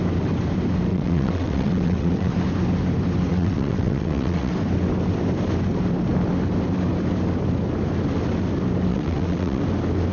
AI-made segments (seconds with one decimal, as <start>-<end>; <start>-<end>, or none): 0.9-2.3; 3.3-4.5; 8.9-9.6